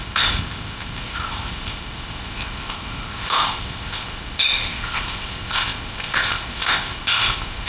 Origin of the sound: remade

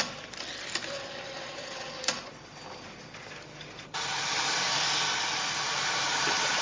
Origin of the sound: recorded